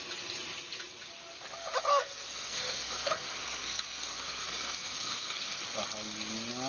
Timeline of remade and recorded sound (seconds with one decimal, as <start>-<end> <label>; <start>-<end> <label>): 0.0-1.9 recorded; 1.9-5.6 remade; 5.6-6.7 recorded